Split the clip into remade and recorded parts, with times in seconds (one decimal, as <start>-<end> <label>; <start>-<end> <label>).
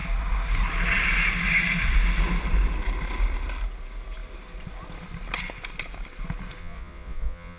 0.0-6.6 recorded; 6.6-7.6 remade